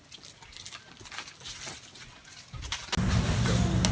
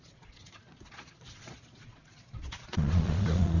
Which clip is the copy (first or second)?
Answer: second